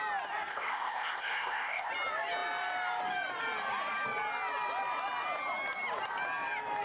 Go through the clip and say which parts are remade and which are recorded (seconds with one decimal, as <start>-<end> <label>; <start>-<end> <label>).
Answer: 0.0-0.5 recorded; 0.5-1.9 remade; 1.9-6.8 recorded